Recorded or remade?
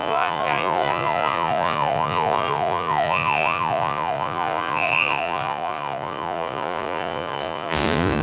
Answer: remade